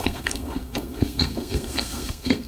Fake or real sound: fake